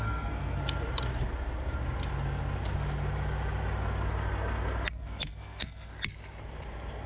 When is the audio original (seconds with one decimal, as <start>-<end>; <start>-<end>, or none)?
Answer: 0.6-4.9; 5.9-7.1

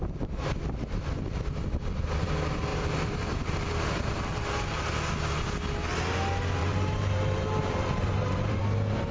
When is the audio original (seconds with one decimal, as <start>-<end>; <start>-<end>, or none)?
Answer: 0.0-2.7; 4.8-6.6; 8.6-9.1

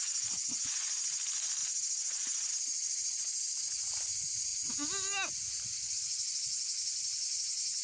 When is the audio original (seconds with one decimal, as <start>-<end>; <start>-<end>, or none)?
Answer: 0.0-7.8

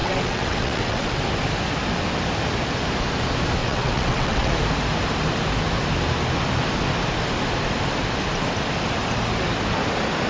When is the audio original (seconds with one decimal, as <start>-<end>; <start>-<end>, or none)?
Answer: 1.2-3.6; 4.5-10.3

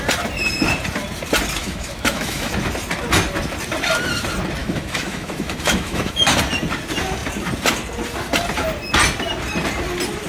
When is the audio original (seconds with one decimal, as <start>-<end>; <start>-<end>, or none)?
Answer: 0.0-1.6; 2.5-4.6; 6.3-10.3

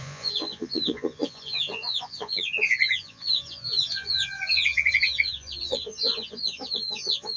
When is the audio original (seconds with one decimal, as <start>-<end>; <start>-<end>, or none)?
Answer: none

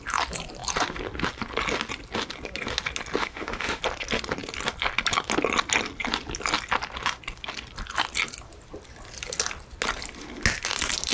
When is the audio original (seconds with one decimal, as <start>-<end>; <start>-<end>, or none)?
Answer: 0.0-3.2; 3.8-11.1

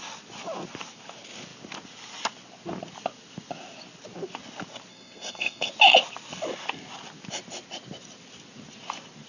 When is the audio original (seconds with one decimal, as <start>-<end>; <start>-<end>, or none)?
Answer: 0.0-4.9; 5.7-9.3